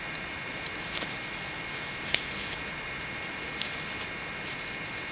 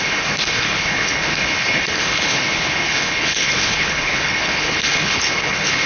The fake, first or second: second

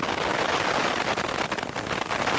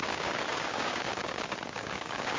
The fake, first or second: second